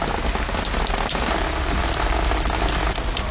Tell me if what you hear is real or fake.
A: real